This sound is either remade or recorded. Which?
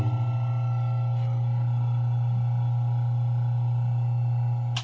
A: recorded